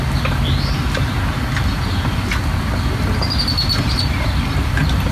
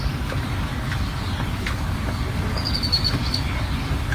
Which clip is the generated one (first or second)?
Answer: second